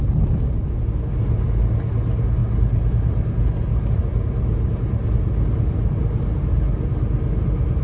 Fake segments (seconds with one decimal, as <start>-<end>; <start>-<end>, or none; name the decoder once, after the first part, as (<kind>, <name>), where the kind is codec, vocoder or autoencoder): none